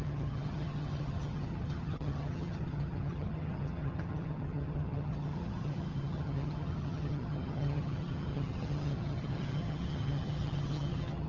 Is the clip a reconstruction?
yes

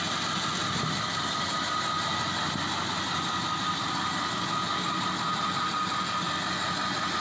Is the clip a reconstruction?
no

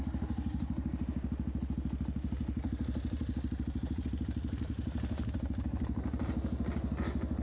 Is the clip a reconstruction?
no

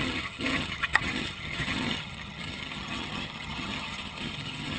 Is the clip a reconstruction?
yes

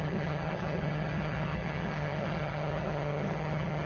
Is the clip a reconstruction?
yes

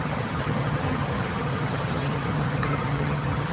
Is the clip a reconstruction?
yes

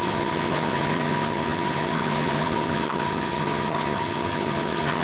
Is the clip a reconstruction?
yes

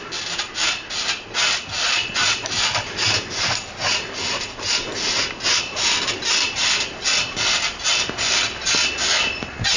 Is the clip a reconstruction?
no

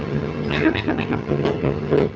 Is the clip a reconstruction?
yes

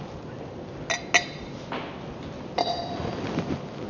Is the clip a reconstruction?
no